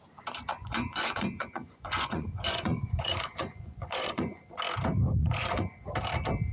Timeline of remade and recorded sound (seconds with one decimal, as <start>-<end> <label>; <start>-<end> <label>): 0.0-0.5 recorded; 0.5-4.4 remade; 4.4-5.2 recorded; 5.2-5.9 remade; 5.9-6.5 recorded